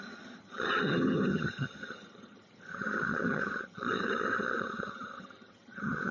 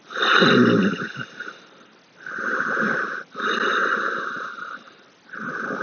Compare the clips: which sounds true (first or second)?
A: second